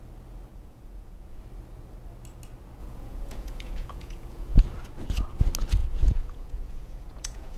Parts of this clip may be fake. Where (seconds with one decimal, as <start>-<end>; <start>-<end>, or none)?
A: 0.5-1.4; 2.8-4.6; 5.8-7.6